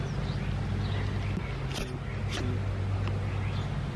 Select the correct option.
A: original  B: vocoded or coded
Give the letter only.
A